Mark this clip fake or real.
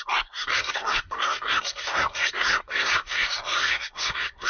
fake